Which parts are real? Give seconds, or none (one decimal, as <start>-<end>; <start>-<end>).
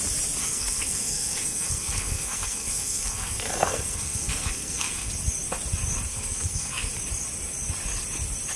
0.0-0.4; 5.1-6.1; 6.9-8.6